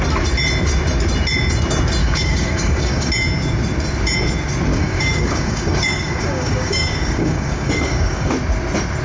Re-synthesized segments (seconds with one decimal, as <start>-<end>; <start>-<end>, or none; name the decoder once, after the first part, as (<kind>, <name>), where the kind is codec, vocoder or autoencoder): 2.0-3.1 (codec, DAC); 4.7-8.3